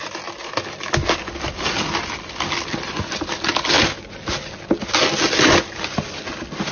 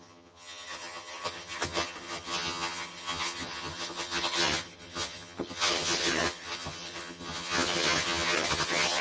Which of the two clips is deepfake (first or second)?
second